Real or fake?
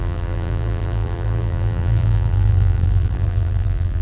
fake